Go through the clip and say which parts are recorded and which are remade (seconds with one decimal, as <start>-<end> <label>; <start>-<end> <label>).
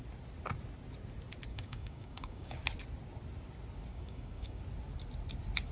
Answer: 0.0-1.5 recorded; 1.5-2.6 remade; 2.6-3.9 recorded; 3.9-4.6 remade; 4.6-5.7 recorded